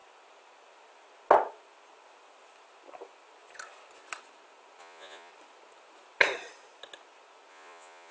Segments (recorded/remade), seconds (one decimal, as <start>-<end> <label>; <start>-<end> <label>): 0.0-4.8 recorded; 4.8-5.3 remade; 5.3-7.5 recorded; 7.5-8.1 remade